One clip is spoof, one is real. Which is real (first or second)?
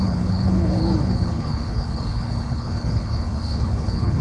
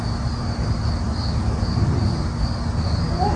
second